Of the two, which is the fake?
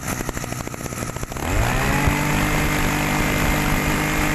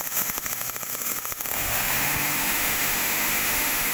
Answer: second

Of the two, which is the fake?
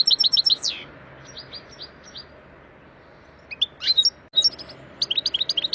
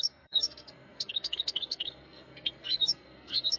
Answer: second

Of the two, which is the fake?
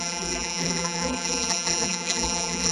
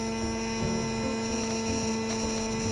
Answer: first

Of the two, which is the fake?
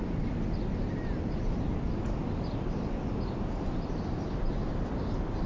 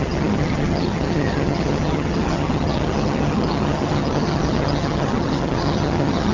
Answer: second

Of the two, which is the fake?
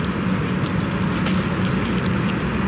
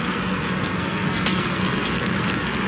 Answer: second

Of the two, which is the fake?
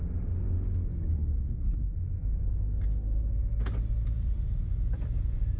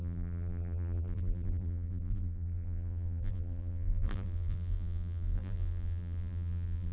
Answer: second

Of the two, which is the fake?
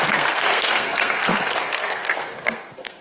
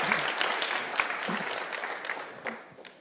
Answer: first